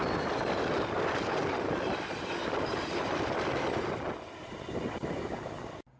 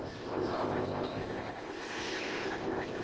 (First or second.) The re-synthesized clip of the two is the second